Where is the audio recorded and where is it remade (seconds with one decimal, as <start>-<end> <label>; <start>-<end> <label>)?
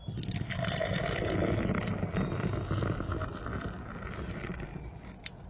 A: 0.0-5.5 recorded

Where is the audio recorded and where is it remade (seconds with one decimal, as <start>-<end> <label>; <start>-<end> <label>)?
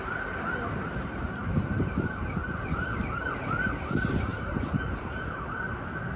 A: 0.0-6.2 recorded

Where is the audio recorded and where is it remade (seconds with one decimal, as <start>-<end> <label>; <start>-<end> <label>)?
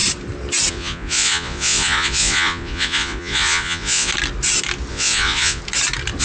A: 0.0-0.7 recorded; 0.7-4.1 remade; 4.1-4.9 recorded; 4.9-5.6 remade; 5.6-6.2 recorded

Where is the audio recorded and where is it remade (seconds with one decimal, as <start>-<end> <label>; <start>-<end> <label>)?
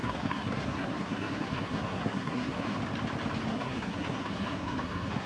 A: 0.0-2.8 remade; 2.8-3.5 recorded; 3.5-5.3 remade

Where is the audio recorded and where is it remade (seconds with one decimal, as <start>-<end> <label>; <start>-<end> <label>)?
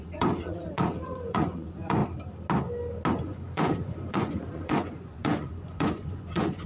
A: 0.0-2.0 remade; 2.0-3.1 recorded; 3.1-6.7 remade